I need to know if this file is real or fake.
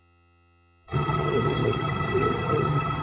fake